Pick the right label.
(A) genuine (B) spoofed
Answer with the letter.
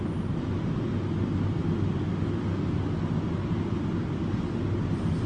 A